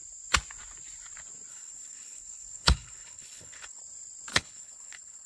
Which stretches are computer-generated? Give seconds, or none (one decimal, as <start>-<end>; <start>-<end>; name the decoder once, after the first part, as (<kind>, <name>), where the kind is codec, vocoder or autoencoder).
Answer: 1.5-3.8 (codec, HILCodec); 4.3-5.3

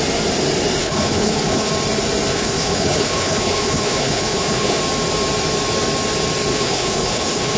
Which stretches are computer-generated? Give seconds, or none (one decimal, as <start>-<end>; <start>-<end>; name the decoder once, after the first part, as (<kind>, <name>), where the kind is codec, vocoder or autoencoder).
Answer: 0.8-1.7 (codec, HILCodec); 2.3-4.8; 6.5-7.6